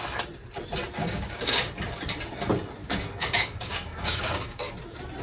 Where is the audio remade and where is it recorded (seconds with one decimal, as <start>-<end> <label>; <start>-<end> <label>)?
0.0-1.0 recorded; 1.0-1.7 remade; 1.7-2.8 recorded; 2.8-4.7 remade; 4.7-5.2 recorded